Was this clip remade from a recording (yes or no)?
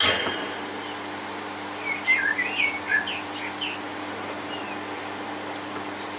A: no